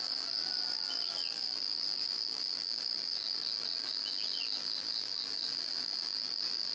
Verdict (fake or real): fake